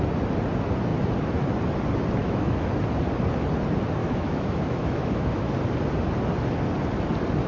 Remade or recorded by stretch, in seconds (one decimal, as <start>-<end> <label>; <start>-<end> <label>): 0.0-2.2 recorded; 2.2-2.7 remade; 2.7-4.0 recorded; 4.0-5.5 remade; 5.5-7.5 recorded